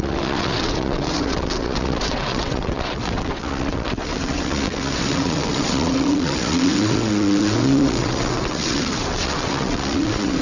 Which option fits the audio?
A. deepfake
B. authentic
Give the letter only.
A